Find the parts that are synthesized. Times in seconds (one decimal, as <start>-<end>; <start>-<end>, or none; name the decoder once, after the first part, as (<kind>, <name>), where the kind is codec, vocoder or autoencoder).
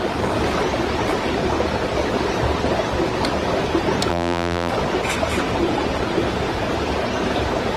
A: 4.1-4.7 (vocoder, BigVGAN v2)